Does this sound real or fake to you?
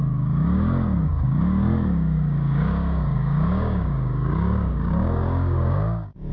fake